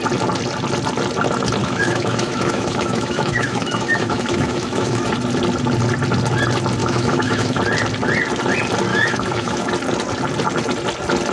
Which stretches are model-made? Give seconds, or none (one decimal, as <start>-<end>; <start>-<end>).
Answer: 1.6-5.1; 6.8-7.6; 8.9-9.7